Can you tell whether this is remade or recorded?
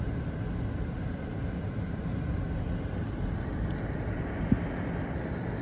recorded